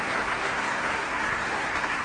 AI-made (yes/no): yes